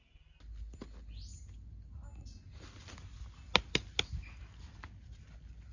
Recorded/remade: recorded